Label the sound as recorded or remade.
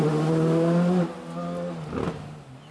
recorded